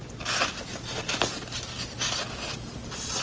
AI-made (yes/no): no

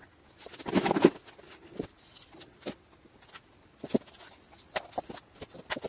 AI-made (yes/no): no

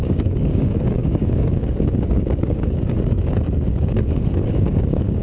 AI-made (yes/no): yes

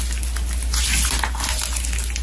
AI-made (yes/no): no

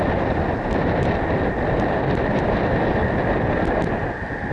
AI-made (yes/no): no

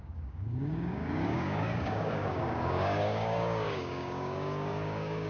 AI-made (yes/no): yes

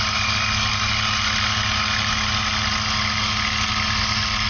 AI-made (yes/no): no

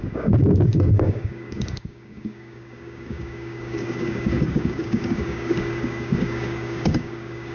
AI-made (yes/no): yes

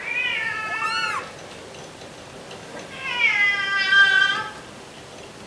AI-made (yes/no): no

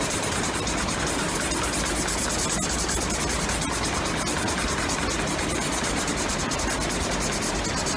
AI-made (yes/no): no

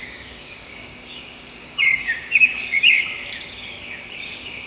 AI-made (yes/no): yes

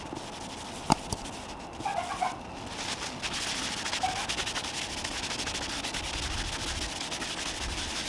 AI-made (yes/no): no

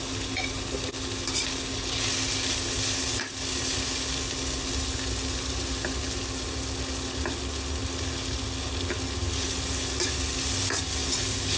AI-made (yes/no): no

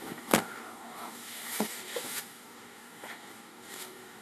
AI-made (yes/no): yes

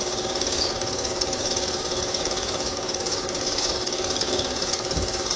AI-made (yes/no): yes